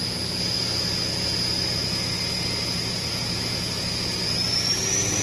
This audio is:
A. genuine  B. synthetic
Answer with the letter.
A